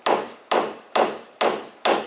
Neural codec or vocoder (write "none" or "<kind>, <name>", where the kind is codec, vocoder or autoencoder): none